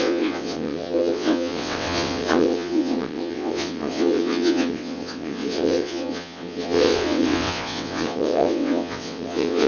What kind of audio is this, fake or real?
fake